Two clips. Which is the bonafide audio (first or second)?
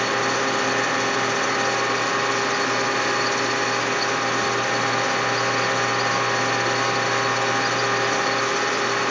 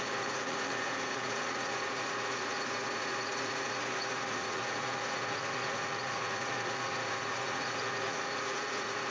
first